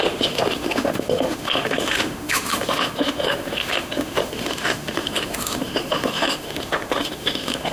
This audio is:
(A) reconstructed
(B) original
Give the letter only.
A